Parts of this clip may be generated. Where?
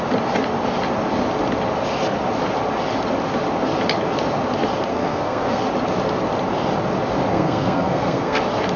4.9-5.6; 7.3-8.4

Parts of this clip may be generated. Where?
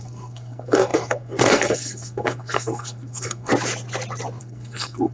0.0-3.5; 4.4-5.1